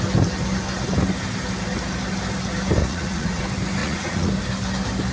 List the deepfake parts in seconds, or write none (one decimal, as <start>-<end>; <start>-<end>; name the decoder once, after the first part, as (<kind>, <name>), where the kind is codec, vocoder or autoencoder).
2.8-3.4 (vocoder, Vocos); 3.8-4.3